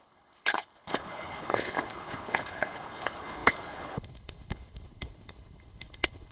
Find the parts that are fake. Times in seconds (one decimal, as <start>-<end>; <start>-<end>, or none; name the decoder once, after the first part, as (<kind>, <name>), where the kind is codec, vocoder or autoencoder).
0.0-6.3 (codec, HILCodec)